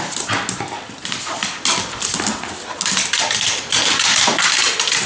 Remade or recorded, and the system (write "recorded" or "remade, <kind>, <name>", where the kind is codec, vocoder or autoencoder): recorded